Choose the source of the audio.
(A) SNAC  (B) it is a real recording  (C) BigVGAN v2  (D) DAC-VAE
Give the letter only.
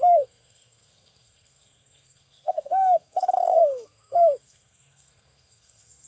A